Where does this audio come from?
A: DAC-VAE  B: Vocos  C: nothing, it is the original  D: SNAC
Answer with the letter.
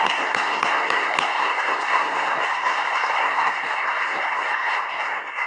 D